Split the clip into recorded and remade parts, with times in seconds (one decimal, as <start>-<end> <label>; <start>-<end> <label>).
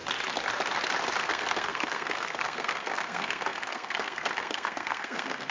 0.0-1.2 recorded; 1.2-5.5 remade